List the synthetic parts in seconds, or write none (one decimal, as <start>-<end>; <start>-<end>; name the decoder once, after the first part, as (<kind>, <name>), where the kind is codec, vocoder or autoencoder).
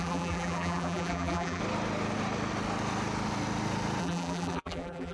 0.0-1.6 (vocoder, BigVGAN v2); 4.0-5.1